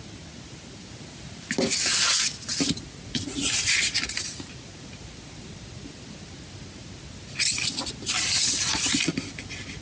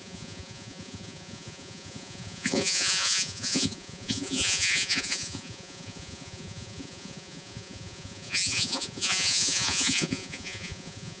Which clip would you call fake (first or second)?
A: second